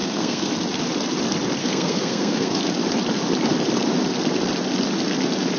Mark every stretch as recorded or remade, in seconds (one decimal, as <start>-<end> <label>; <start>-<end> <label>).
0.0-0.5 remade; 0.5-1.6 recorded; 1.6-2.6 remade; 2.6-5.6 recorded